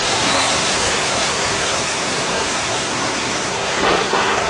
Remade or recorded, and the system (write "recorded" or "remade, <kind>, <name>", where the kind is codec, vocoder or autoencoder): remade, codec, SNAC